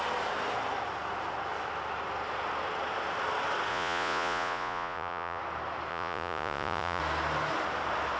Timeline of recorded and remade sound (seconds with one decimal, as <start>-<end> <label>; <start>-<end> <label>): 0.0-3.7 recorded; 3.7-5.4 remade; 5.4-5.9 recorded; 5.9-7.0 remade; 7.0-8.2 recorded